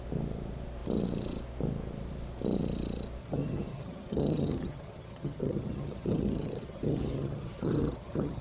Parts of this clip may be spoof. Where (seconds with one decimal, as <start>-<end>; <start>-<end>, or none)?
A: 3.2-8.4